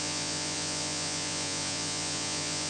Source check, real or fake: fake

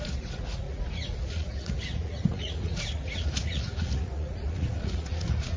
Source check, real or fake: fake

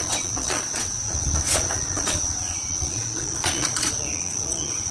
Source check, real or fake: fake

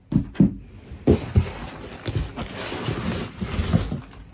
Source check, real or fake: real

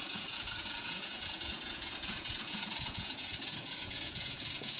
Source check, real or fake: fake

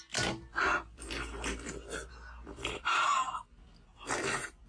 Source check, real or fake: real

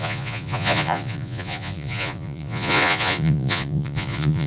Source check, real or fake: fake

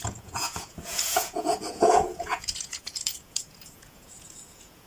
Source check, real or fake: fake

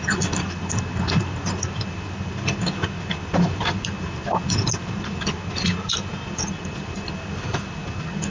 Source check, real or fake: real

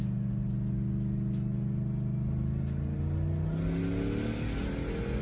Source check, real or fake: real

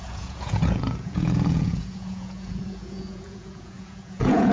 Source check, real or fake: fake